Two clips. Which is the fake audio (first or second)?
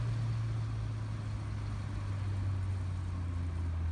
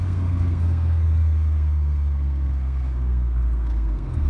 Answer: second